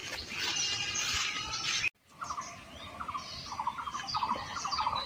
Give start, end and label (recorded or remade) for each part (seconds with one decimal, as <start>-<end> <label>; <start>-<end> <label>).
0.0-5.1 recorded